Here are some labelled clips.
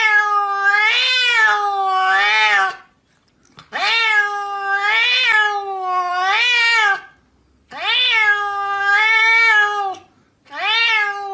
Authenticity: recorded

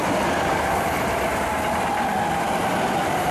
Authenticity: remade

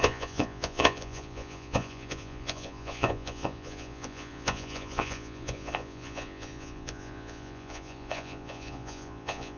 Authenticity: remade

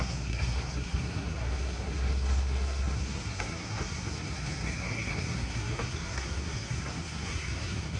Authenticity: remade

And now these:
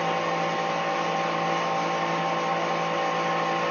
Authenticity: recorded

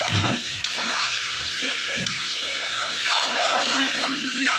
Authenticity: remade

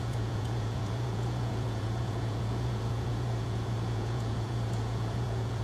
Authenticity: remade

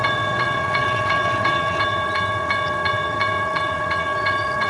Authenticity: remade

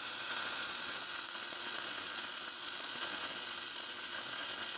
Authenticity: remade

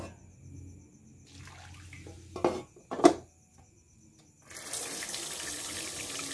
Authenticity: recorded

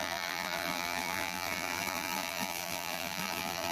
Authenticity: remade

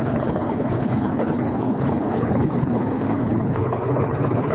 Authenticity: remade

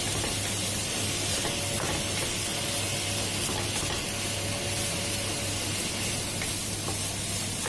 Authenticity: recorded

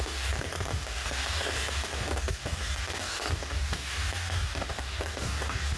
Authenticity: remade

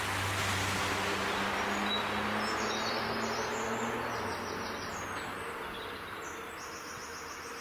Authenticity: recorded